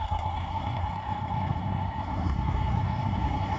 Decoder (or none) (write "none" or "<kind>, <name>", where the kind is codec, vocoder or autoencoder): codec, SNAC